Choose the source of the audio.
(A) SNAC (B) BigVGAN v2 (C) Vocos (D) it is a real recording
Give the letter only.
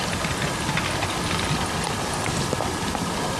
D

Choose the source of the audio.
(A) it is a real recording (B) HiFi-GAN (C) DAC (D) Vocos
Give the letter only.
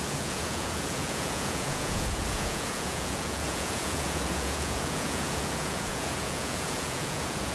D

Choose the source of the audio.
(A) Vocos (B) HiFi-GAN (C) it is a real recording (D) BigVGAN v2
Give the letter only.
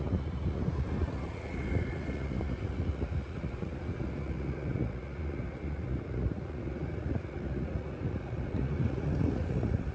A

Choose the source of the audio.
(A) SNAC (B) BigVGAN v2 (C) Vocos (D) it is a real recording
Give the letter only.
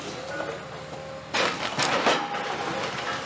D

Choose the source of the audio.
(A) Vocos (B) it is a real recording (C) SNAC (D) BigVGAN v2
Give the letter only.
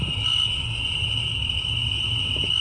B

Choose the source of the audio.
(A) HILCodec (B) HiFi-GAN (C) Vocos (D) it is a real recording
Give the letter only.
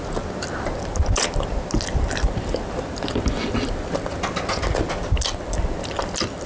D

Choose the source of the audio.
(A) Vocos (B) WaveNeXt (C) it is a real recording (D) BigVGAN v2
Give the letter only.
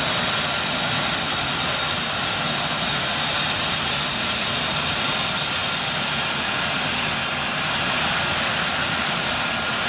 C